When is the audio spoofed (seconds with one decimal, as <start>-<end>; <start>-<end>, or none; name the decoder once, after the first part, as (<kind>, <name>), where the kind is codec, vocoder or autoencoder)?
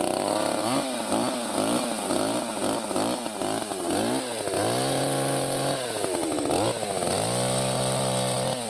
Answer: none